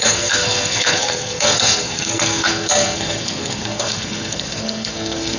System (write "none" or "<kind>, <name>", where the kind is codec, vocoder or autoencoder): codec, SNAC